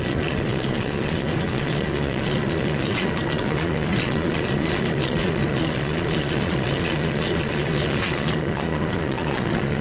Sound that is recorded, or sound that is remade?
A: remade